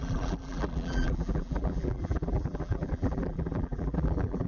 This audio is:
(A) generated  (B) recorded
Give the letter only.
A